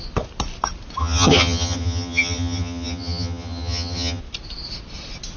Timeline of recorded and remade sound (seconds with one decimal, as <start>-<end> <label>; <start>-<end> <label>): 0.0-1.0 recorded; 1.0-4.2 remade; 4.2-5.4 recorded